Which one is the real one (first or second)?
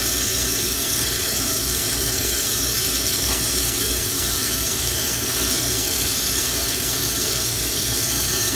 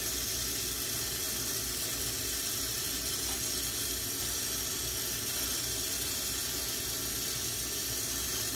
second